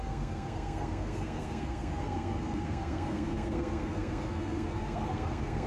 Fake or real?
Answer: fake